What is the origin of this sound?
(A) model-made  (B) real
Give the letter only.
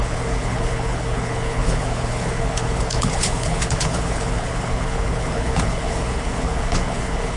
A